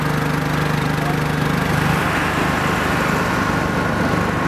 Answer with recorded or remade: recorded